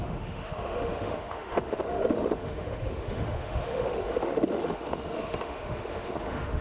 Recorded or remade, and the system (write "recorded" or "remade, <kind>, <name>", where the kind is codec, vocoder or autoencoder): remade, autoencoder, DAC-VAE